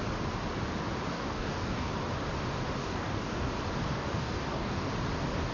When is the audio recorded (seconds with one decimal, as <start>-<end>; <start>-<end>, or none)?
0.0-1.1; 1.9-2.8; 3.5-3.9; 4.9-5.5